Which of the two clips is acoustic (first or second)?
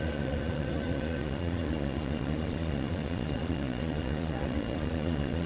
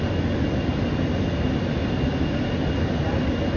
second